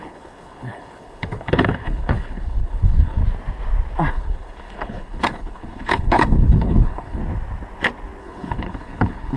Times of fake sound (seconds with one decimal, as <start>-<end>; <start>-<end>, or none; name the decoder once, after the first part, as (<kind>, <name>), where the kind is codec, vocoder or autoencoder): 0.0-3.2 (codec, HILCodec); 4.1-7.2; 8.2-9.4